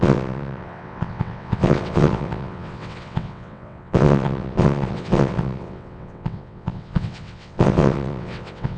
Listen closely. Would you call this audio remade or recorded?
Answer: remade